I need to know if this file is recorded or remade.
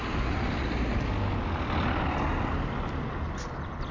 recorded